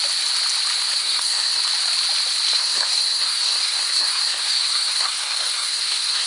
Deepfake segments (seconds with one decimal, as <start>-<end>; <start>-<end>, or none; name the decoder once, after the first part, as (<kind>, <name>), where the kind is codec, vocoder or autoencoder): 1.0-1.6 (codec, SNAC); 2.5-6.3